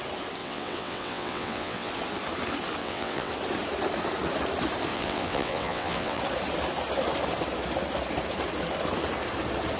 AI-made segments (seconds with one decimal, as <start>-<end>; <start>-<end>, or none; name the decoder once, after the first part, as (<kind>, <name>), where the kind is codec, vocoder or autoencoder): 0.4-1.9 (vocoder, WaveNeXt); 2.8-3.3; 4.9-6.2